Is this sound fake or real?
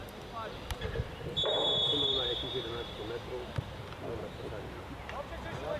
real